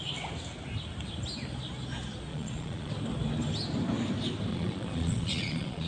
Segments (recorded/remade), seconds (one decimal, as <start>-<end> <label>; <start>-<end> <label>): 0.0-2.3 recorded; 2.3-2.9 remade; 2.9-4.5 recorded; 4.5-5.9 remade